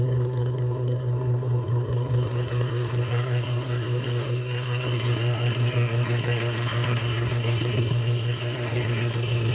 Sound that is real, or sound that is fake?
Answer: fake